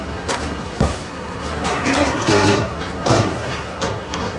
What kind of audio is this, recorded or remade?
remade